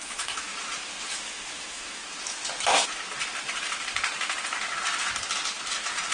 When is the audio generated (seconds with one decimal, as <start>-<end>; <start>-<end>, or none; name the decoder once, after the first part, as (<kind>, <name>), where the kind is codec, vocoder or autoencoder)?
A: 0.0-0.5 (autoencoder, DAC-VAE); 1.1-2.0